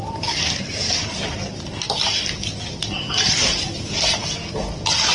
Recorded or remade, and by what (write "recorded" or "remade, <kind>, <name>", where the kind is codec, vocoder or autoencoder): recorded